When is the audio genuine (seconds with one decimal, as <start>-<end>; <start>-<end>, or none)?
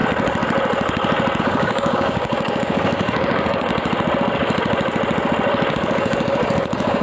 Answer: 0.0-1.4; 3.7-5.7